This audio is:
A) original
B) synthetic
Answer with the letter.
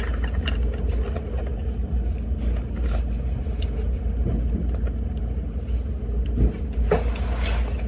A